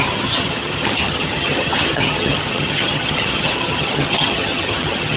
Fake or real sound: fake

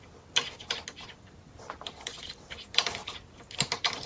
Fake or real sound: real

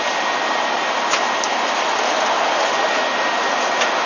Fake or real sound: real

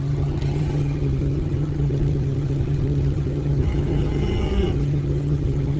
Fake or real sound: fake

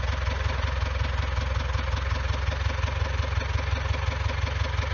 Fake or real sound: real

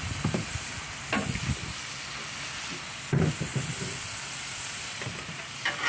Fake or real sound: real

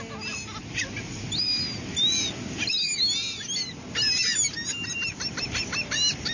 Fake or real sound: real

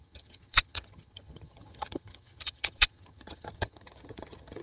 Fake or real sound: fake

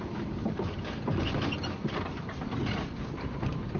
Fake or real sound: real